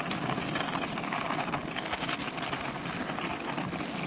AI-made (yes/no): no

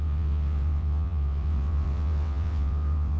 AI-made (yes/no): yes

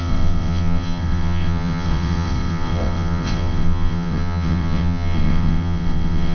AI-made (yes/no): yes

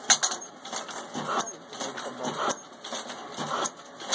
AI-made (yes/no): no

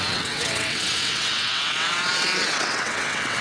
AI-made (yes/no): yes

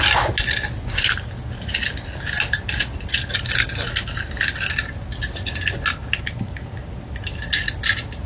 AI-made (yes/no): no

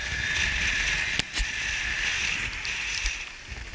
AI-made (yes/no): no